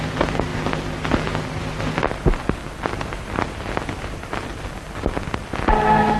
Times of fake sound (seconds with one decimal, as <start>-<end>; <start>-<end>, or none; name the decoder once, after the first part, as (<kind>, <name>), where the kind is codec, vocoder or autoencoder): none